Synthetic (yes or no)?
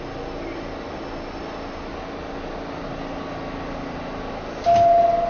no